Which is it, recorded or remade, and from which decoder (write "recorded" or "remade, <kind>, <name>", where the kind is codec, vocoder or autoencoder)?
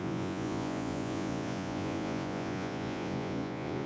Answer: remade, vocoder, Vocos